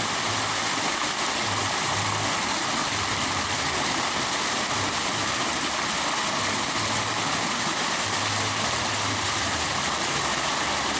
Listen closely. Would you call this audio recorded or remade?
recorded